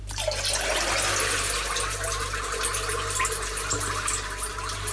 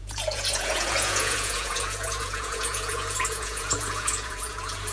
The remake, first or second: second